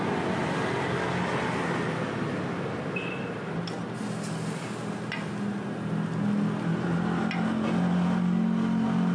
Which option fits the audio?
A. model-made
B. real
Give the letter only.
B